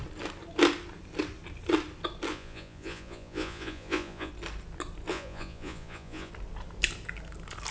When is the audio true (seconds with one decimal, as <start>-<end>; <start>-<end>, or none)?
0.0-2.3; 4.3-5.1; 6.3-7.7